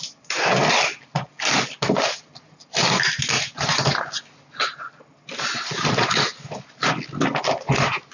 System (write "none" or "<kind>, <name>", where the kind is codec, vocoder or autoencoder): none